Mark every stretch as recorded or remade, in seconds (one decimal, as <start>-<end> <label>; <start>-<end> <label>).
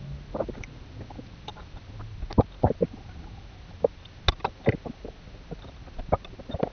0.0-6.7 recorded